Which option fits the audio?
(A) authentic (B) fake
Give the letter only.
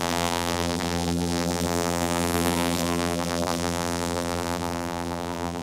B